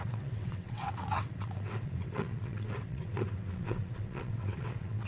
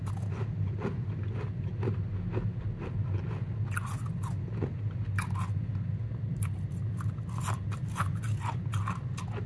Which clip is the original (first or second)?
second